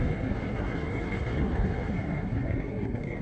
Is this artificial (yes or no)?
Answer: yes